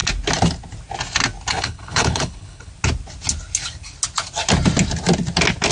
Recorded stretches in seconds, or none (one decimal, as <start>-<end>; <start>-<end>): 0.0-1.5; 2.7-5.7